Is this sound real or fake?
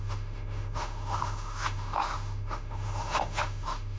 fake